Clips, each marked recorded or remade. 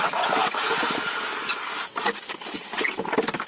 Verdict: recorded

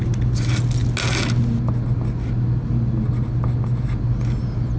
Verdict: recorded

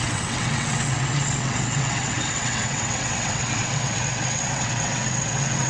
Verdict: remade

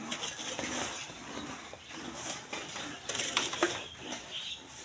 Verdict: recorded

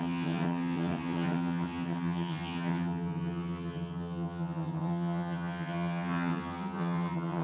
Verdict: remade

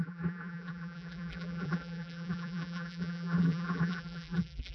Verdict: remade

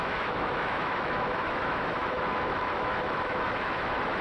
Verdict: remade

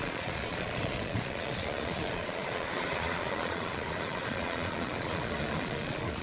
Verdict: remade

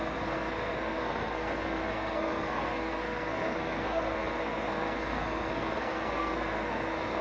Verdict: remade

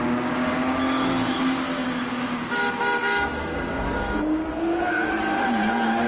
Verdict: remade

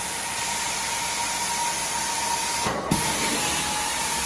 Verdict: recorded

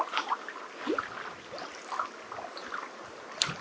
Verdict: recorded